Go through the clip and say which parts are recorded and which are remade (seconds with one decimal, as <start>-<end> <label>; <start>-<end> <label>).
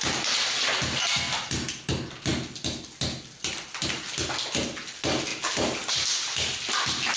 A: 0.0-7.2 recorded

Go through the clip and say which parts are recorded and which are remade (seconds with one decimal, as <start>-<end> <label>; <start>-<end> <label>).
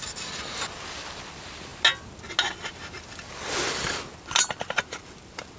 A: 0.0-5.6 recorded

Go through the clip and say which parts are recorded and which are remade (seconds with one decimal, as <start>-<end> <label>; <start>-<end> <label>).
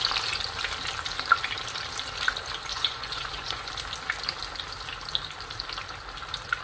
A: 0.0-2.7 recorded; 2.7-3.7 remade; 3.7-6.6 recorded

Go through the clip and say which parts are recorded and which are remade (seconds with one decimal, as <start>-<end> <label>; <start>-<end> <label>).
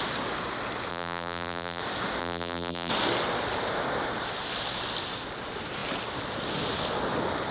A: 0.0-0.9 recorded; 0.9-1.8 remade; 1.8-2.2 recorded; 2.2-2.9 remade; 2.9-7.5 recorded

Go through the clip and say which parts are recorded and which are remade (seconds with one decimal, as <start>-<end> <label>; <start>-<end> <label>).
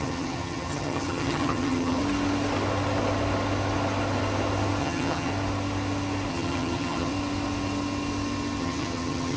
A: 0.0-2.0 remade; 2.0-4.8 recorded; 4.8-5.3 remade; 5.3-6.3 recorded; 6.3-7.1 remade; 7.1-8.6 recorded; 8.6-9.4 remade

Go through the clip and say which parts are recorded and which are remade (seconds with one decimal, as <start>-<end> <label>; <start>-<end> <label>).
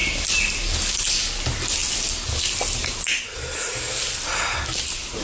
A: 0.0-5.2 recorded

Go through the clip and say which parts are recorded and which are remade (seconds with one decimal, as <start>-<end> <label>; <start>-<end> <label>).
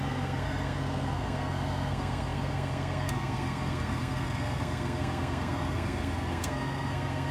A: 0.0-7.3 remade